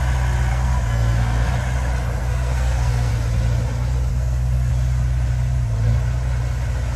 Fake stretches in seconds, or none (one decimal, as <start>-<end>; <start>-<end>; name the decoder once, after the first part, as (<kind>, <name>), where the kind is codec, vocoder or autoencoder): 0.5-1.5 (codec, SNAC); 2.2-3.1; 4.1-4.7